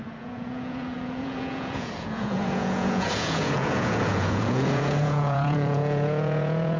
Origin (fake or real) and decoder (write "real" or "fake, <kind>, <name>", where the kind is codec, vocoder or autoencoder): fake, vocoder, Vocos